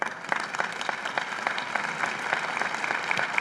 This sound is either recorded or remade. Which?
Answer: remade